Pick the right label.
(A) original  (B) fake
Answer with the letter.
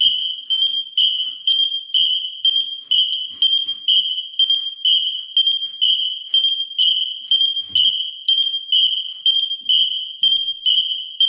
A